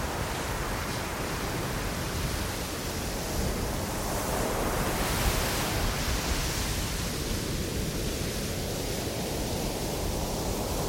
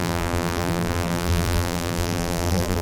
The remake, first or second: second